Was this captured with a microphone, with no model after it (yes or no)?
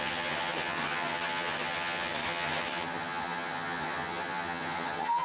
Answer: no